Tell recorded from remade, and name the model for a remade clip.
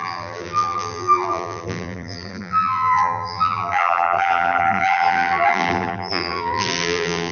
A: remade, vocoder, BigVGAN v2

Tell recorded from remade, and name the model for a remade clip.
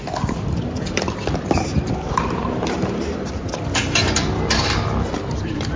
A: remade, vocoder, BigVGAN v2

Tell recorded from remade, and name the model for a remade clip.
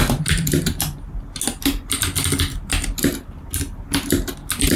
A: recorded